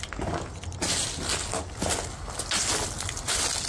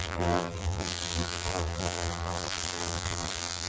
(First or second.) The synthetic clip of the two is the second